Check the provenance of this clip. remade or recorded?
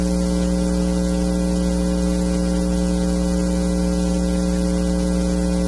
recorded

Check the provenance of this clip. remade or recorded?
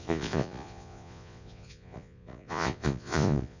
remade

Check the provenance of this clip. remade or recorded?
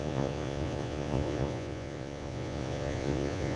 remade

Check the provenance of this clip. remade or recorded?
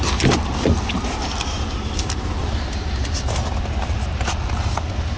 recorded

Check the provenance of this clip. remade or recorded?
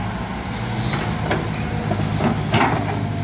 recorded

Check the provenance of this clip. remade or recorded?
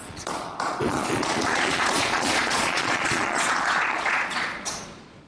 remade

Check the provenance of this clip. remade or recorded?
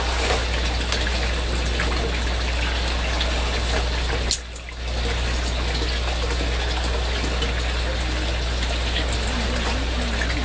recorded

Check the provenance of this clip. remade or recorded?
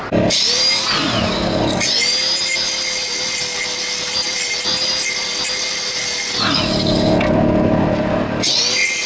recorded